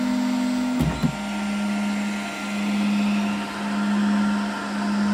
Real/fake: real